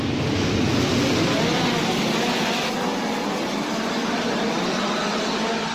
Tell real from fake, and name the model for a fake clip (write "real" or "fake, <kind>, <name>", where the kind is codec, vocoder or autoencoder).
real